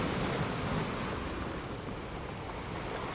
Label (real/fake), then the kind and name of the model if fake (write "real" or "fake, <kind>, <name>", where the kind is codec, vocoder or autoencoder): real